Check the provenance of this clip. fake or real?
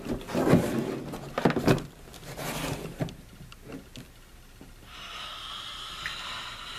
real